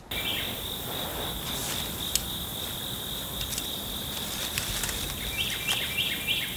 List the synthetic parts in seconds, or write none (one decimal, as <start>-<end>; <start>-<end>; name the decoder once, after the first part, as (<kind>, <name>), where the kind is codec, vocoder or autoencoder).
2.5-6.6 (vocoder, BigVGAN v2)